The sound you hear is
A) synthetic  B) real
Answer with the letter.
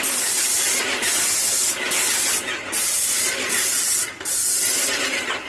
B